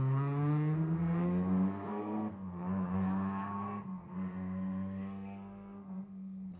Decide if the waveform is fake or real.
fake